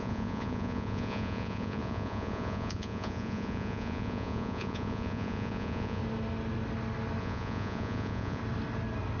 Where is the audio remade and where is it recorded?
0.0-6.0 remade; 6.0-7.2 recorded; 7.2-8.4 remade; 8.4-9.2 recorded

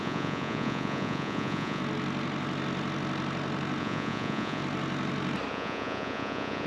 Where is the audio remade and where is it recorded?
0.0-1.8 remade; 1.8-3.8 recorded; 3.8-4.6 remade; 4.6-5.5 recorded; 5.5-6.7 remade

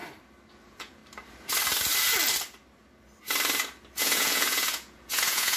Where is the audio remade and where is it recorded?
0.0-0.5 recorded; 0.5-1.0 remade; 1.0-4.0 recorded; 4.0-5.6 remade

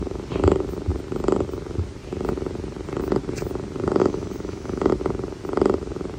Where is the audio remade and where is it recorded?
0.0-4.0 recorded; 4.0-4.9 remade; 4.9-6.2 recorded

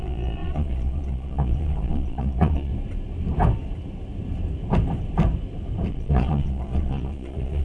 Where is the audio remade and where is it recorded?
0.0-2.7 remade; 2.7-5.9 recorded; 5.9-7.6 remade

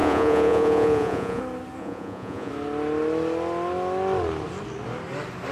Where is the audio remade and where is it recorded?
0.0-1.4 remade; 1.4-1.8 recorded; 1.8-2.5 remade; 2.5-5.5 recorded